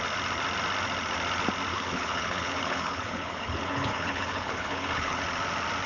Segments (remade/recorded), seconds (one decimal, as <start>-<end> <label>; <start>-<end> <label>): 0.0-1.7 recorded; 1.7-5.2 remade; 5.2-5.9 recorded